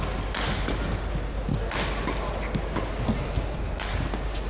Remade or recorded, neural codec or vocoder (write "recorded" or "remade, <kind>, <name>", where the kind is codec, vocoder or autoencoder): recorded